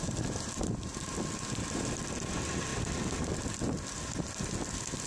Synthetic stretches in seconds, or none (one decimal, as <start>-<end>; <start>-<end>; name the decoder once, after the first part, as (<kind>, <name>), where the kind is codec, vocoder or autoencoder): 0.9-1.8 (vocoder, BigVGAN v2)